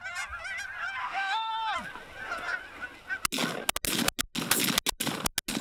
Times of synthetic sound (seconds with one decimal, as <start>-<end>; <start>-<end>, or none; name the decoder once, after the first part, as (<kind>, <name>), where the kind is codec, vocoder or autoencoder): 1.0-1.5 (autoencoder, DAC-VAE)